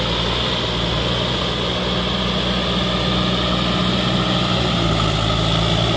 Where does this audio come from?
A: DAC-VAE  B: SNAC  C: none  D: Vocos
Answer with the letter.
C